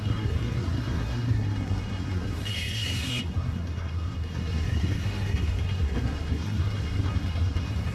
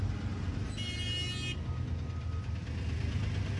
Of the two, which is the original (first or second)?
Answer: second